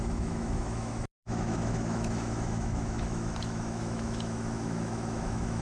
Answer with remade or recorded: remade